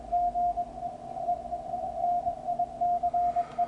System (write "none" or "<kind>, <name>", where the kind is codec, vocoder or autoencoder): none